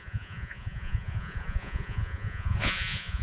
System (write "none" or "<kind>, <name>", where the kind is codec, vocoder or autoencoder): vocoder, Vocos